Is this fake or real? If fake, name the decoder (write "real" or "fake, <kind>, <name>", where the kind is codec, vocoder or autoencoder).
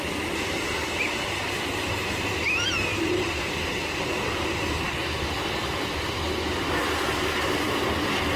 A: real